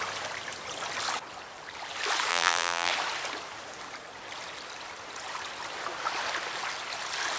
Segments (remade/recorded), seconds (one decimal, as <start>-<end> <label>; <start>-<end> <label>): 0.0-2.3 recorded; 2.3-2.9 remade; 2.9-7.4 recorded